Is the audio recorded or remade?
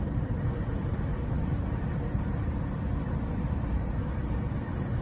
remade